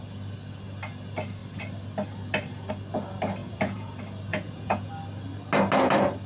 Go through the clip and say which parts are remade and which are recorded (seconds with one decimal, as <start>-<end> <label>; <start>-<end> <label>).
0.0-3.4 recorded; 3.4-3.9 remade; 3.9-4.3 recorded; 4.3-4.9 remade; 4.9-6.3 recorded